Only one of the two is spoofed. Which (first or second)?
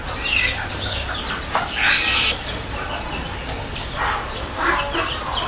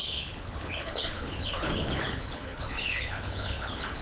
second